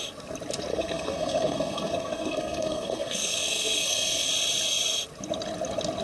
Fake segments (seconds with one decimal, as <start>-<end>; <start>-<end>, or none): 0.7-4.3